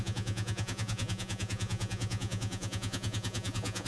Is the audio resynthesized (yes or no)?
yes